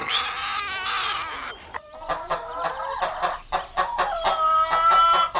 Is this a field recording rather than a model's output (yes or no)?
yes